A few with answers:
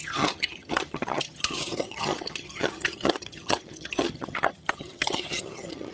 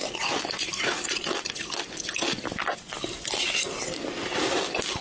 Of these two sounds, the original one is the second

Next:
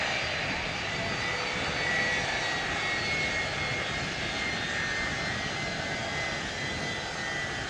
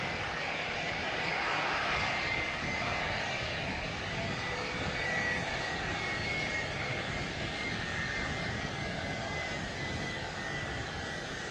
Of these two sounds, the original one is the first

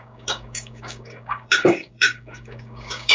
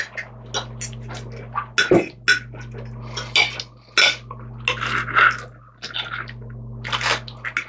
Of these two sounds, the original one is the second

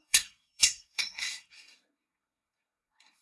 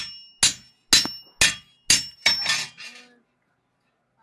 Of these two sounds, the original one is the second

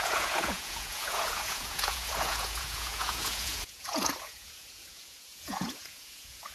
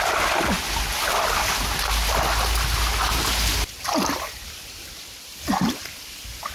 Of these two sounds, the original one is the second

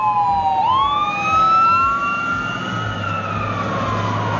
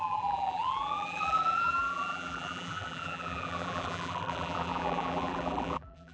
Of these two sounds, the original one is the first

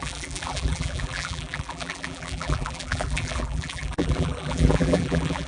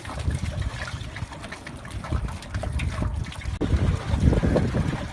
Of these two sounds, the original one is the second